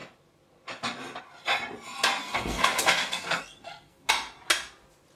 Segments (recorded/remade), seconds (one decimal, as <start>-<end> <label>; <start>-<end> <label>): 0.0-2.2 recorded; 2.2-4.1 remade; 4.1-5.2 recorded